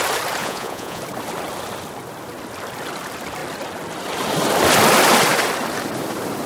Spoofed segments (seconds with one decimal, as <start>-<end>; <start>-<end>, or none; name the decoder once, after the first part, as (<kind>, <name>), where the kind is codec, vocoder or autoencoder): 0.4-1.0 (vocoder, Vocos)